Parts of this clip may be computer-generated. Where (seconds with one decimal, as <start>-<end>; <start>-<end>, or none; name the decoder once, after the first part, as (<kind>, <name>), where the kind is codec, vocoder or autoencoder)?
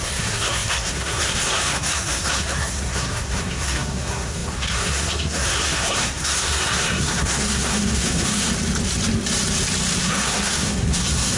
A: 0.0-8.5 (codec, SNAC); 10.0-11.4